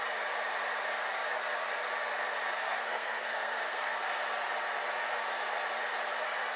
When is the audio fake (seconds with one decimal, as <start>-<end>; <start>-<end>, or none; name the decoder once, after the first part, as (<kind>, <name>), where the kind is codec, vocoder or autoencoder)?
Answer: 2.6-4.2 (codec, SNAC)